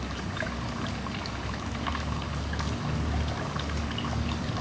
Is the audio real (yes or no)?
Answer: no